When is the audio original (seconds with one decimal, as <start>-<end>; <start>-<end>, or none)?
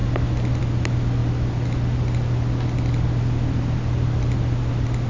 0.0-5.1